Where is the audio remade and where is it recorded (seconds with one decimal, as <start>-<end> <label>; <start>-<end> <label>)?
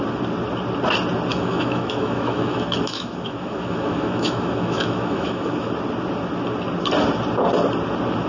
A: 0.0-1.3 recorded; 1.3-5.7 remade; 5.7-8.3 recorded